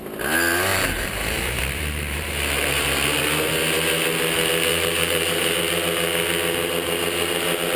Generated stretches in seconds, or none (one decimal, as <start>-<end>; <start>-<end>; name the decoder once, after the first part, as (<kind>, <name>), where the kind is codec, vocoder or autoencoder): 0.7-3.2 (vocoder, BigVGAN v2); 4.7-5.6

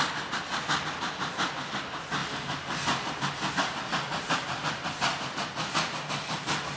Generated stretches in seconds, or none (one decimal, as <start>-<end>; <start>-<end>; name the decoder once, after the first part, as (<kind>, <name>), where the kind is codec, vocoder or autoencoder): none

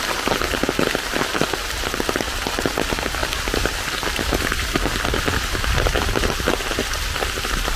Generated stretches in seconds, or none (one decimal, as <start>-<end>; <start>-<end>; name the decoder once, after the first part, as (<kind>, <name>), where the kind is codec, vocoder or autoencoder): 3.2-5.7 (vocoder, BigVGAN v2); 6.8-7.8

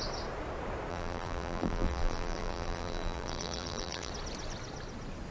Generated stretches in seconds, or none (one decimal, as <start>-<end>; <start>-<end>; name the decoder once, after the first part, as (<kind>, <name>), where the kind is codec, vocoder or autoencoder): 0.9-4.1 (vocoder, BigVGAN v2)